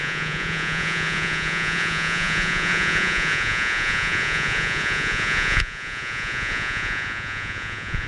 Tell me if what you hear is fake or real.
fake